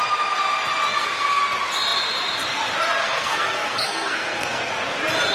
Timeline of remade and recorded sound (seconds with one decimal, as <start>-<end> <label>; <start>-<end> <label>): 0.0-0.9 recorded; 0.9-1.4 remade; 1.4-3.0 recorded; 3.0-4.7 remade; 4.7-5.3 recorded